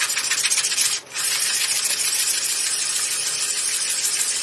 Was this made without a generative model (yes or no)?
no